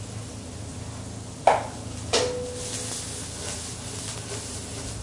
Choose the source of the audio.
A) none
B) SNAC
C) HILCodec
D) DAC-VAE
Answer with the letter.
A